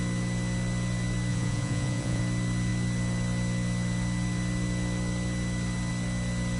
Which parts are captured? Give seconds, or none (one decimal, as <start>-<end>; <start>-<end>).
0.0-1.3; 2.2-6.6